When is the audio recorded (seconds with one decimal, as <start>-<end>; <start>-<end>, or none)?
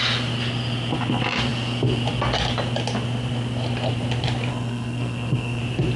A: 0.0-4.5; 5.6-6.0